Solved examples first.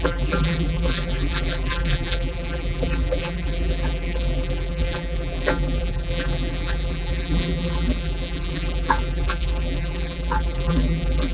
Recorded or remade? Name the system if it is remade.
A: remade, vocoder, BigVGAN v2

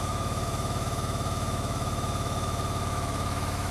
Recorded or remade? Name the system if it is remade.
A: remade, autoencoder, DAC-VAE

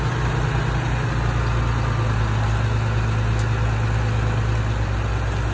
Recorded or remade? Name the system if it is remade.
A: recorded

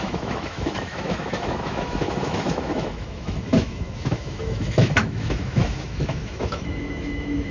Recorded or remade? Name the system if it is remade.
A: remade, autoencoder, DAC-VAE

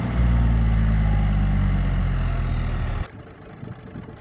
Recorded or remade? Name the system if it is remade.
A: recorded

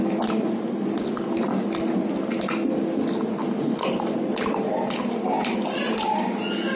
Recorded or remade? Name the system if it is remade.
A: recorded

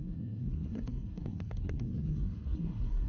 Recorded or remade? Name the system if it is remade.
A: remade, codec, SNAC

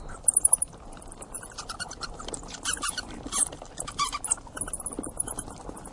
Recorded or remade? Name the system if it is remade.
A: recorded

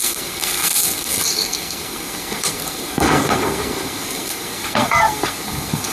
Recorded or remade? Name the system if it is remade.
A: remade, codec, SNAC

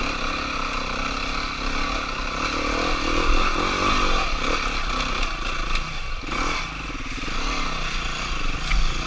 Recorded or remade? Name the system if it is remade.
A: recorded